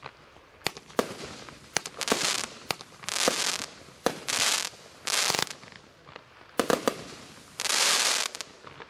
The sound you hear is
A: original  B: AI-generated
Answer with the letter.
A